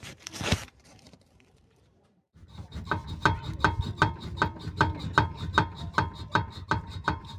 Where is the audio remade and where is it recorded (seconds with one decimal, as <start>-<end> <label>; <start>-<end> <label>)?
0.0-2.4 remade; 2.4-6.8 recorded; 6.8-7.4 remade